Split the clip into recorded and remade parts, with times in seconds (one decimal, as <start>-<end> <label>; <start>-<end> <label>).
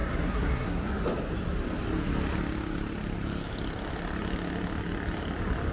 0.0-0.9 remade; 0.9-5.7 recorded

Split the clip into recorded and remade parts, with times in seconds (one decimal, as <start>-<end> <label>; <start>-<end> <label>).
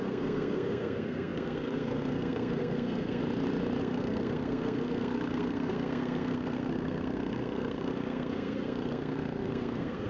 0.0-3.2 remade; 3.2-3.8 recorded; 3.8-10.1 remade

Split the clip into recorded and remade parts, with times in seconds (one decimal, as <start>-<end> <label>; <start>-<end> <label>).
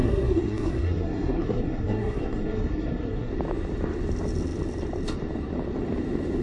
0.0-3.3 remade; 3.3-6.4 recorded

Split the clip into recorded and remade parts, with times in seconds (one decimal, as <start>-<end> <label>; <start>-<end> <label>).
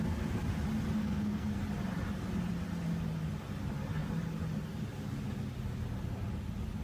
0.0-1.0 recorded; 1.0-1.6 remade; 1.6-6.8 recorded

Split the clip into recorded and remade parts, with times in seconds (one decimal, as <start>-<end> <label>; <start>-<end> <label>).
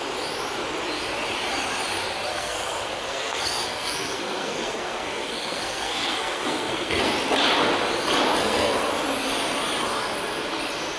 0.0-2.3 recorded; 2.3-7.1 remade; 7.1-8.4 recorded; 8.4-8.9 remade; 8.9-11.0 recorded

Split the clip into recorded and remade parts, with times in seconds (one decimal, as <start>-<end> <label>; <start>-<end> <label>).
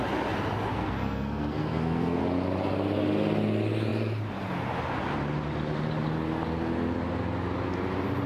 0.0-0.7 recorded; 0.7-2.2 remade; 2.2-8.3 recorded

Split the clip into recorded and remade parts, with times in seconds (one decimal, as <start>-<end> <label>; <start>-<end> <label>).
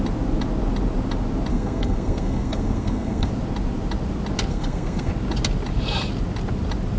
0.0-1.5 recorded; 1.5-3.3 remade; 3.3-4.5 recorded; 4.5-5.1 remade; 5.1-7.0 recorded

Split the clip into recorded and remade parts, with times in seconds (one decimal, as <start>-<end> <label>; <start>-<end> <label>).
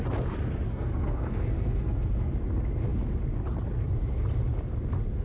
0.0-0.7 recorded; 0.7-2.3 remade; 2.3-5.2 recorded